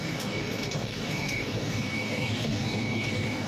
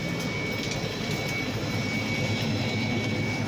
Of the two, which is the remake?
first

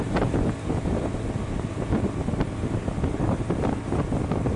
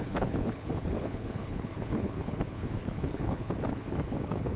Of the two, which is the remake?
second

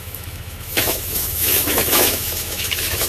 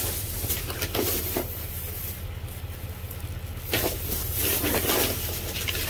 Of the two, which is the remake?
first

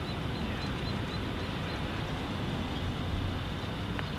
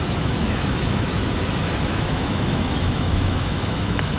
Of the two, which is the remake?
second